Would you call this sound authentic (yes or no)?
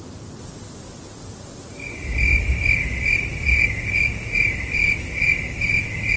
yes